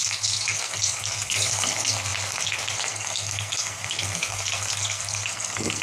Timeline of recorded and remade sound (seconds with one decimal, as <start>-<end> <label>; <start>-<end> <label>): 0.0-5.8 remade